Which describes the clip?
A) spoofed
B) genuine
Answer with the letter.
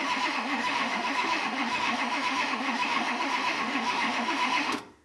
A